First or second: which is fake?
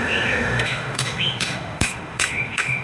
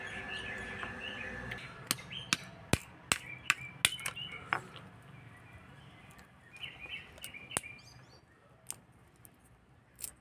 first